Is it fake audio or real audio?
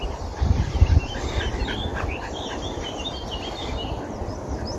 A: fake